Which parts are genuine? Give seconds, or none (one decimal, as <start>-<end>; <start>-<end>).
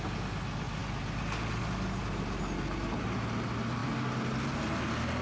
0.0-5.2